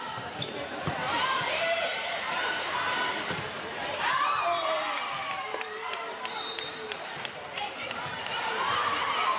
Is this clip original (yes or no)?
no